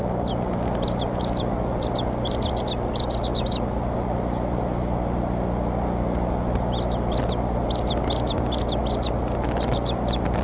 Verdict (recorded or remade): recorded